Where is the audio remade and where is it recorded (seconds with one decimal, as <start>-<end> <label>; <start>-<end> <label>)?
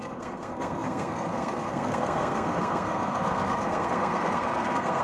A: 0.0-5.0 remade